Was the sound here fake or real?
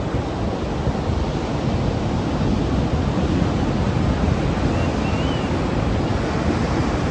real